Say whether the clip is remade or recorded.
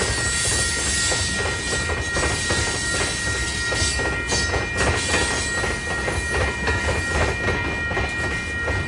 recorded